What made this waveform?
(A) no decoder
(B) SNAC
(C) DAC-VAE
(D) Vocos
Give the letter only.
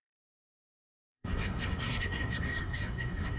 B